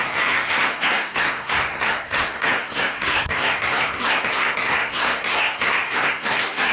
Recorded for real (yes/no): no